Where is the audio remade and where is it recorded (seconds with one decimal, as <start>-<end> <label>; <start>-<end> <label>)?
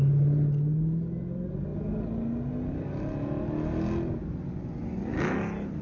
0.0-5.8 recorded